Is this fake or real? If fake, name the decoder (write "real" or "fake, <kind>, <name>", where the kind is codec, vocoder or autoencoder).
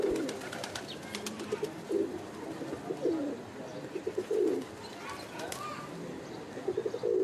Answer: real